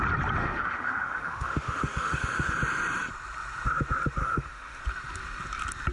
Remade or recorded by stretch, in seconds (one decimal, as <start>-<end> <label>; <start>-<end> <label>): 0.0-0.4 recorded; 0.4-2.5 remade; 2.5-4.2 recorded; 4.2-4.8 remade; 4.8-5.9 recorded